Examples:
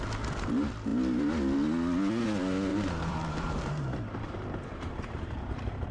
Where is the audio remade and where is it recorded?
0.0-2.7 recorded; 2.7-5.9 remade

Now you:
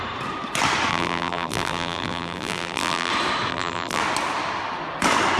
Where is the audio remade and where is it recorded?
0.0-0.9 recorded; 0.9-3.1 remade; 3.1-3.5 recorded; 3.5-4.0 remade; 4.0-5.4 recorded

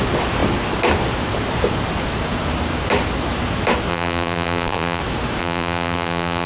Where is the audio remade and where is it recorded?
0.0-3.9 recorded; 3.9-5.0 remade; 5.0-5.4 recorded; 5.4-6.5 remade

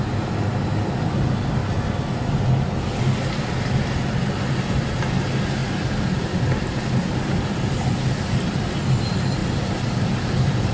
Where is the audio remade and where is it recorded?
0.0-9.4 recorded; 9.4-10.7 remade

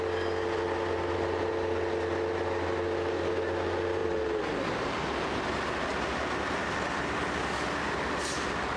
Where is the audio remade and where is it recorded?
0.0-8.8 recorded

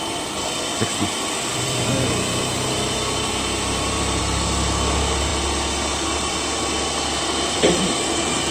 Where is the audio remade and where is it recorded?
0.0-0.9 recorded; 0.9-4.2 remade; 4.2-8.5 recorded

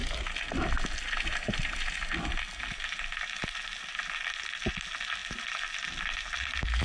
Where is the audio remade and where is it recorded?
0.0-6.8 recorded